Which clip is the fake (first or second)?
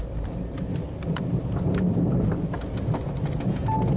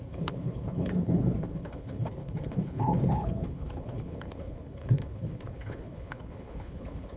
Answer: second